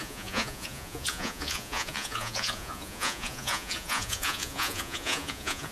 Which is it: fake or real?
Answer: fake